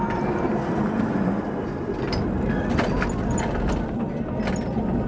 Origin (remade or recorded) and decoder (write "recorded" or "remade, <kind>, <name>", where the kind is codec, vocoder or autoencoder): recorded